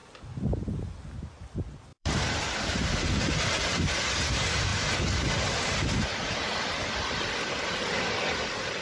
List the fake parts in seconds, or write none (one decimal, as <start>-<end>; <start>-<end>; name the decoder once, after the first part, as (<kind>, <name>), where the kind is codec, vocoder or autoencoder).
1.9-2.4 (vocoder, BigVGAN v2)